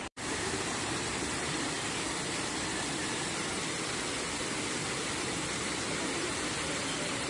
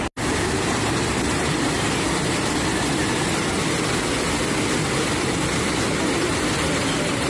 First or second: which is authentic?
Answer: second